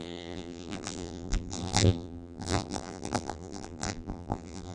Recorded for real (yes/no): no